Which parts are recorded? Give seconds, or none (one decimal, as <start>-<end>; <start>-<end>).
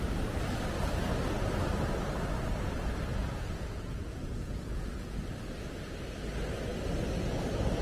0.0-3.2; 5.2-7.8